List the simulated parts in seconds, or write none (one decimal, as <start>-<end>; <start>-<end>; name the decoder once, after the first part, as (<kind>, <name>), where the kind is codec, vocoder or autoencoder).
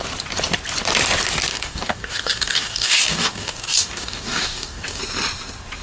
1.5-5.0 (codec, DAC)